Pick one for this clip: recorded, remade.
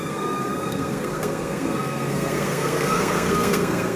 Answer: remade